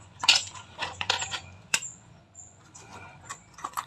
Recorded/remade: remade